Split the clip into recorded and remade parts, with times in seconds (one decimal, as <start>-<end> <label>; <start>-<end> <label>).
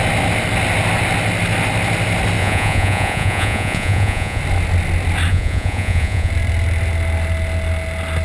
0.0-2.4 recorded; 2.4-4.4 remade; 4.4-5.3 recorded; 5.3-6.3 remade; 6.3-8.2 recorded